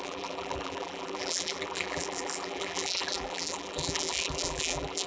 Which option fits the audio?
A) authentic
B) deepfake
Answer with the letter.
B